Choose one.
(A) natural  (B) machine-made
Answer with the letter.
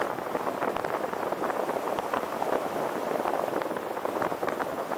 A